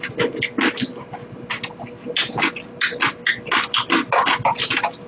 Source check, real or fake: real